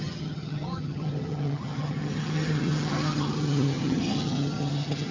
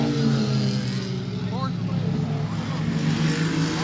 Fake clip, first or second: first